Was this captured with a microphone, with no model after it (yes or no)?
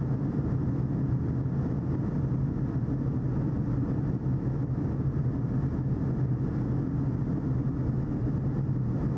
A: yes